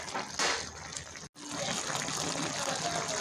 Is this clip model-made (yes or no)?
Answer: no